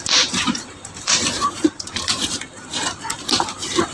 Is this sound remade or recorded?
remade